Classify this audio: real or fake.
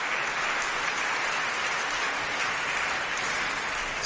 real